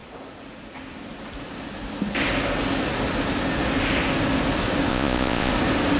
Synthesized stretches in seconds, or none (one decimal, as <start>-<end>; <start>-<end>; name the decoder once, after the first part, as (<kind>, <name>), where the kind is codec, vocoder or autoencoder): 4.9-5.5 (vocoder, Vocos)